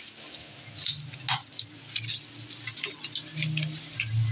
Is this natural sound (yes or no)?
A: yes